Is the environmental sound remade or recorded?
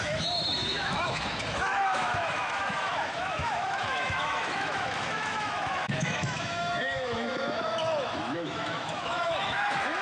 remade